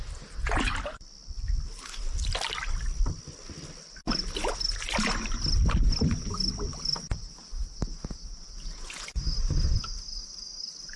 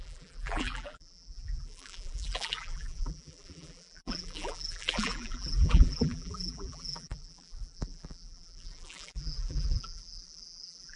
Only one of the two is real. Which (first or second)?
first